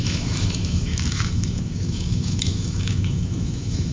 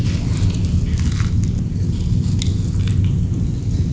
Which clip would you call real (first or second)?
second